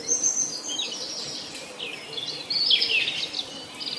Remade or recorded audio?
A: recorded